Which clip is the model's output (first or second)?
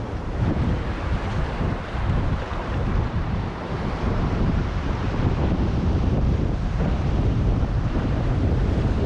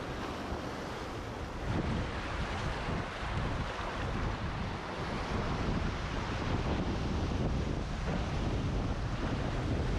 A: first